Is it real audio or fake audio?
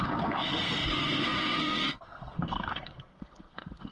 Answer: fake